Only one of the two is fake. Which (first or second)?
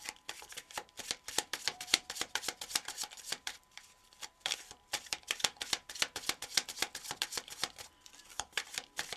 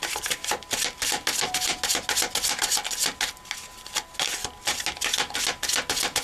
first